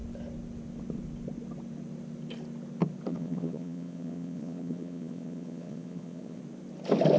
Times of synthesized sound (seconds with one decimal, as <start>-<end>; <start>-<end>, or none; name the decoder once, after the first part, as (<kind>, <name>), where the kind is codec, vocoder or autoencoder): 3.1-6.4 (vocoder, Vocos)